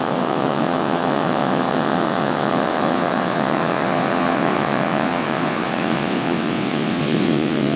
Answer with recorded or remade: remade